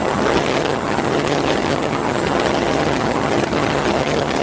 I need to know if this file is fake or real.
fake